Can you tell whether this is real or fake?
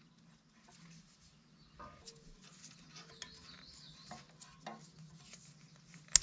real